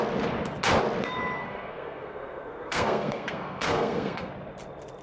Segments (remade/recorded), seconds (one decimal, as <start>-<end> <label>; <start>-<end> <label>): 0.0-1.4 recorded; 1.4-4.3 remade; 4.3-5.0 recorded